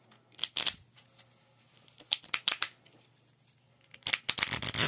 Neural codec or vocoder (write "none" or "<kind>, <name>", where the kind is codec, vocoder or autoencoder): none